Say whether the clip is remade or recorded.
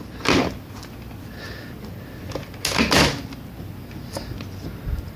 recorded